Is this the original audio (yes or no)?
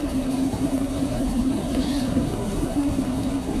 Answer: no